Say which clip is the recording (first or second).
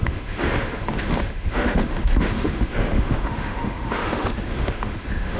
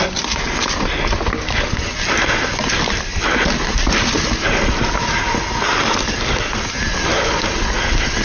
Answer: second